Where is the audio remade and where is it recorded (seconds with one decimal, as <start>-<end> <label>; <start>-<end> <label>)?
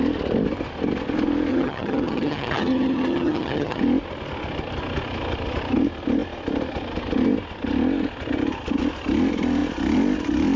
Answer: 0.0-1.5 recorded; 1.5-3.8 remade; 3.8-10.6 recorded